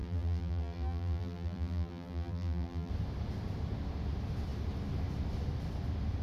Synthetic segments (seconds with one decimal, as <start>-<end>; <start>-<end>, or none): 0.0-2.9

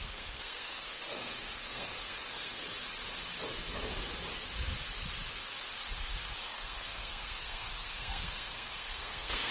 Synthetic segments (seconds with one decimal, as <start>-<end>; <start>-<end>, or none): 0.0-2.6; 6.5-9.5

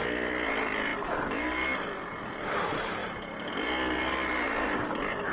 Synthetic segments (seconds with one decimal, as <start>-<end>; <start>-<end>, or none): none